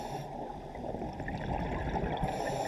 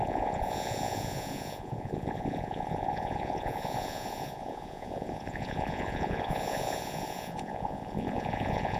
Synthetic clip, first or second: second